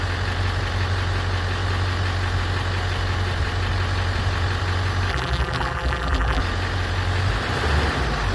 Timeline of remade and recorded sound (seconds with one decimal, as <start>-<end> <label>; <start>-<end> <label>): 0.0-5.1 recorded; 5.1-6.4 remade; 6.4-8.3 recorded